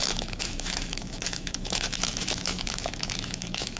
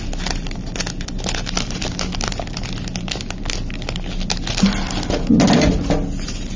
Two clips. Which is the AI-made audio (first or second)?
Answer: first